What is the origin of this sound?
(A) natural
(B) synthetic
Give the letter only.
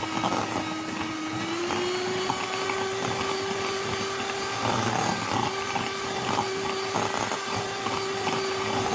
A